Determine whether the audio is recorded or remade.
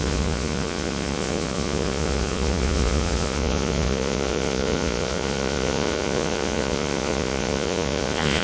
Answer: remade